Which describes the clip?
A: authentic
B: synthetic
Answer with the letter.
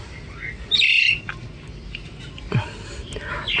A